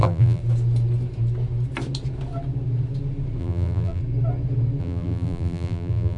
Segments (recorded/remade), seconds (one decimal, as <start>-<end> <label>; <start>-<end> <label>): 0.0-0.4 remade; 0.4-3.4 recorded; 3.4-4.0 remade; 4.0-4.8 recorded; 4.8-6.2 remade